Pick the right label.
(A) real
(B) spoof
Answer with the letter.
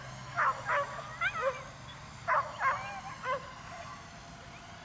A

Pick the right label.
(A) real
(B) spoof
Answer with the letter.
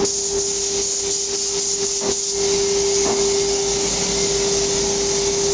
A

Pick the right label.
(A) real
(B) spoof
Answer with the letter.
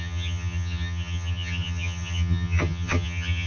B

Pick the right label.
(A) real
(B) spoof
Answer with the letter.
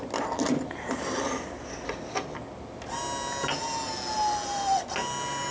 A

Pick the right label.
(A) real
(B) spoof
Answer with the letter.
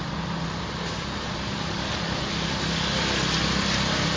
A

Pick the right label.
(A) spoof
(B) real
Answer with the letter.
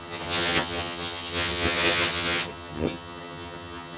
A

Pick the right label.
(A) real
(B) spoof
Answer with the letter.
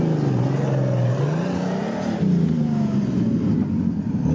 A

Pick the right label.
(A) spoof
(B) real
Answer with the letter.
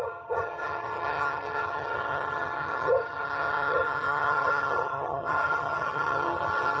A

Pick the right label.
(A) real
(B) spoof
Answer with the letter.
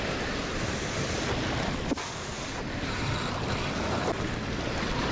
A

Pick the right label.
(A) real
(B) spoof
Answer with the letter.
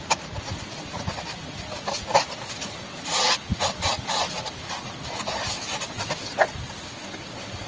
A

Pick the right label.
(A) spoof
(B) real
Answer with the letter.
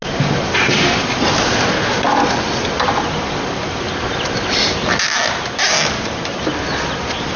B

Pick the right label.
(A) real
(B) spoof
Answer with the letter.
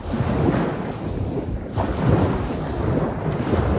A